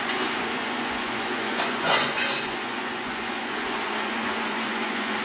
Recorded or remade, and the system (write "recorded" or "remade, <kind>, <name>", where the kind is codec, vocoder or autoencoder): remade, vocoder, Vocos